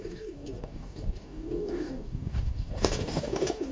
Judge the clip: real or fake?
fake